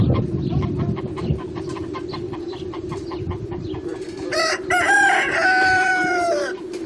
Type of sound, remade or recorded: remade